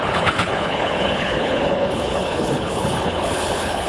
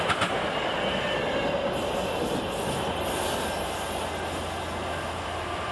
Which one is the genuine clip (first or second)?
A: second